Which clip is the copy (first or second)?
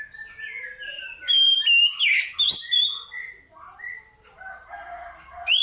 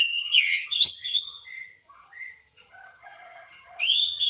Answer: second